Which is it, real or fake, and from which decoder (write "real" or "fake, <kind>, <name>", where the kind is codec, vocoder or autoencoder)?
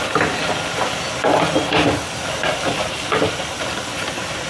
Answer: real